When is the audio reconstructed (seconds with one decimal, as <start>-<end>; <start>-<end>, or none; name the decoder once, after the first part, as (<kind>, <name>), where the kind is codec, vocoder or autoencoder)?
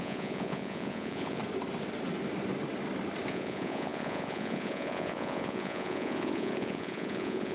0.0-1.4 (vocoder, Vocos); 3.3-7.5